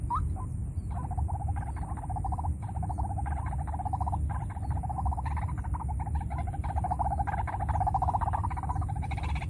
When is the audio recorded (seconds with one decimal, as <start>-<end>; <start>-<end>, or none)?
0.0-0.6; 1.5-9.5